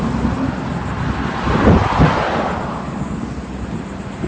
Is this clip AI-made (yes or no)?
no